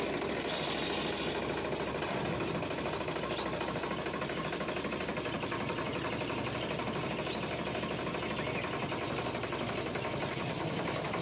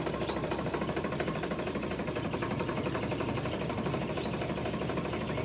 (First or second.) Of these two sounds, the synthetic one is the second